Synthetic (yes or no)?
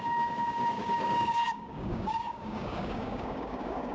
yes